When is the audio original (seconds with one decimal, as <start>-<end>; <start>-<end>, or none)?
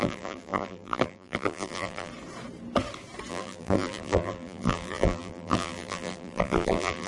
2.1-3.3